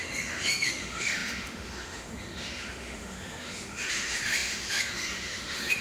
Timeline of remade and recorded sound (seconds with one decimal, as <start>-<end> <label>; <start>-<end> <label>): 0.0-5.8 remade

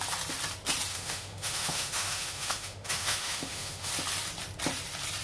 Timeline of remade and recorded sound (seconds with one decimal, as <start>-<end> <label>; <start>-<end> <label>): 0.0-0.9 recorded; 0.9-3.9 remade; 3.9-5.2 recorded

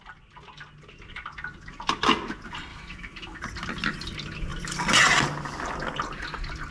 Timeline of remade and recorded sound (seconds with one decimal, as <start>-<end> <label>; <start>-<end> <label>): 0.0-2.7 recorded; 2.7-3.4 remade; 3.4-6.7 recorded

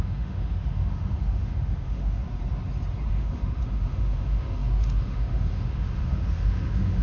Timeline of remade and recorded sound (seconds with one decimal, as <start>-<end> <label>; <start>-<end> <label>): 0.0-2.2 remade; 2.2-3.1 recorded; 3.1-7.0 remade

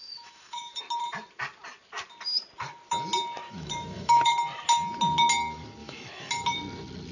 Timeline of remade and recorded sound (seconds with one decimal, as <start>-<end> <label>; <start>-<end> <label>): 0.0-0.8 remade; 0.8-3.4 recorded; 3.4-4.3 remade; 4.3-5.8 recorded; 5.8-6.3 remade; 6.3-7.1 recorded